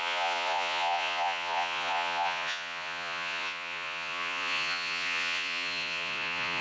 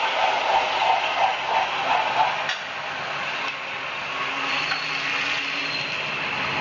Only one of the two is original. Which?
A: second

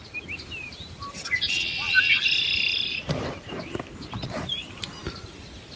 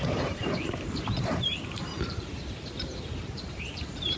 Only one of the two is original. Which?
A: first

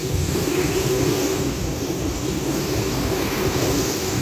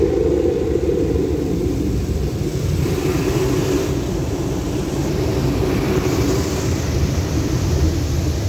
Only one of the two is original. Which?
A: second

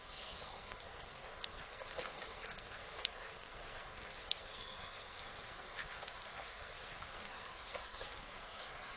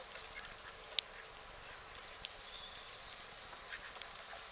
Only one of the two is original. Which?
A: second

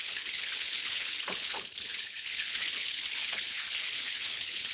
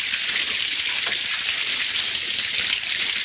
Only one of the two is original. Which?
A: second